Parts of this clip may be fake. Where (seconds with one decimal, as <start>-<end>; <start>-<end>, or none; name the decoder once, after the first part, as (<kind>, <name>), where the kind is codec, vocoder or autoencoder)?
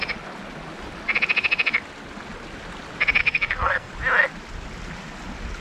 3.2-3.9 (codec, SNAC)